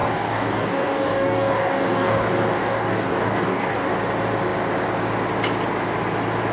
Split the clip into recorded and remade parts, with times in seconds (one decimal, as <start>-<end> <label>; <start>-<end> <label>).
0.0-3.9 remade; 3.9-6.5 recorded